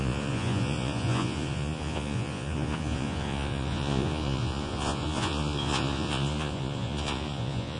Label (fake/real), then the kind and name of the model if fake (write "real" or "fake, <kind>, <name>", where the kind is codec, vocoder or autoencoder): fake, vocoder, Vocos